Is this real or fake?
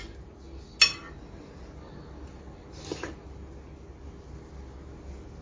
real